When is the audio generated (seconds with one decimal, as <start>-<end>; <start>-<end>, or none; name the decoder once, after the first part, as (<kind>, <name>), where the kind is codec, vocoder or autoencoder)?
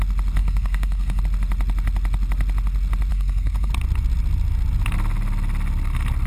0.4-1.2 (codec, SNAC); 3.1-3.7